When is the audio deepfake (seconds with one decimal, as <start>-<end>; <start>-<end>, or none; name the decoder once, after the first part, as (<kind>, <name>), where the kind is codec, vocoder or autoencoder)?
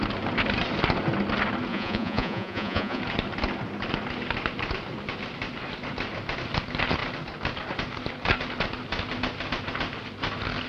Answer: 1.7-3.0 (vocoder, Vocos)